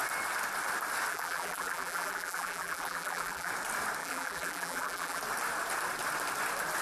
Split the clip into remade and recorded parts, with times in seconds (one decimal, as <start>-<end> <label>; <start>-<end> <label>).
0.0-1.1 recorded; 1.1-3.5 remade; 3.5-4.0 recorded; 4.0-5.2 remade; 5.2-6.8 recorded